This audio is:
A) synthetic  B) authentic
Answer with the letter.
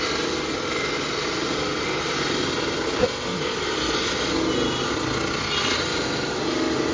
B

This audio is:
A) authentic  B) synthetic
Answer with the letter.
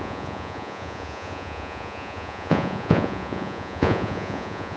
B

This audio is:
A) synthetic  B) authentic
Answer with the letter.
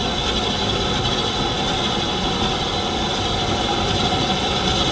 B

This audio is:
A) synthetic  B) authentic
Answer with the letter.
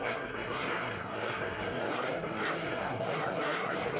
A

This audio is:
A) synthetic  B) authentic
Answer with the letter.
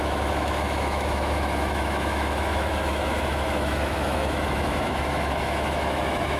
A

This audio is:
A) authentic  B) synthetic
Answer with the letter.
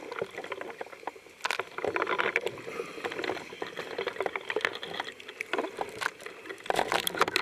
A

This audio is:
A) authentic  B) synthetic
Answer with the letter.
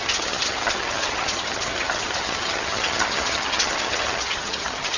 B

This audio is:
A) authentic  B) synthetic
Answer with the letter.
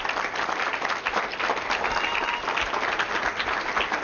A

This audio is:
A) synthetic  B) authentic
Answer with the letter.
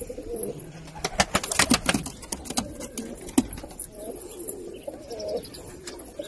B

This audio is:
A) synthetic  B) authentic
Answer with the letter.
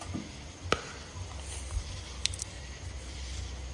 B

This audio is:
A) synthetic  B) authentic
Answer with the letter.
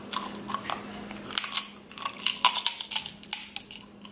B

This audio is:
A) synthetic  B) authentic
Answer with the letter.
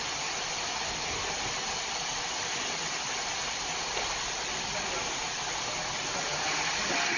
B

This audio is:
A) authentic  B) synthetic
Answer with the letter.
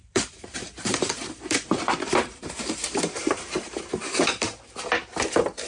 B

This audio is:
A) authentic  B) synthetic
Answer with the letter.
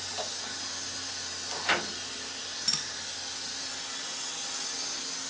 A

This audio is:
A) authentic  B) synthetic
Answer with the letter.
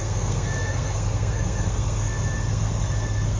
B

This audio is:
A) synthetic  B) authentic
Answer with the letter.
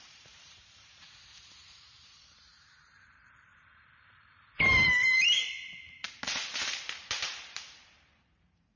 A